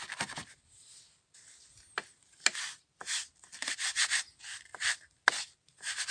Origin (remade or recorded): recorded